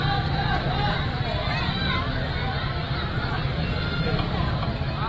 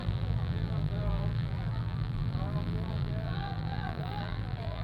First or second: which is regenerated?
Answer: second